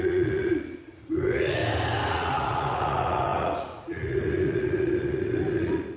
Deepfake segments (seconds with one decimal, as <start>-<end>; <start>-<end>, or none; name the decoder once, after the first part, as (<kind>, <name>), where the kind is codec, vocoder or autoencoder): 0.0-1.6 (vocoder, Vocos); 2.1-6.0